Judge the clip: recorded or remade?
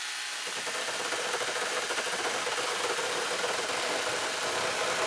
recorded